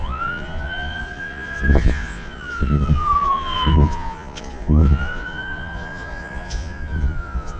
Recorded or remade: remade